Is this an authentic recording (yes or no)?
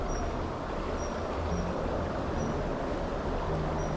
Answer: yes